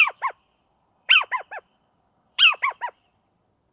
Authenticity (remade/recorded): remade